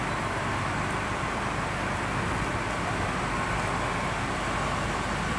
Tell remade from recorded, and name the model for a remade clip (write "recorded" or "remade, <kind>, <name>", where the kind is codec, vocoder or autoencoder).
recorded